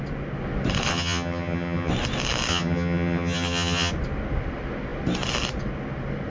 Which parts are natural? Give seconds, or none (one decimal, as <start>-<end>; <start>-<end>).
0.0-0.9; 1.9-2.5; 3.9-6.3